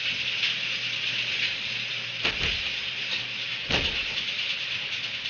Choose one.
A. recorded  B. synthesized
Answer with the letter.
A